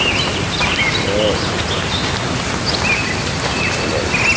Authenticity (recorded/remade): recorded